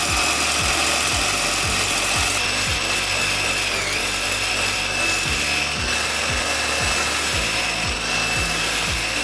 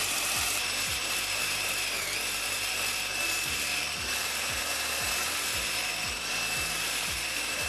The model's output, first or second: second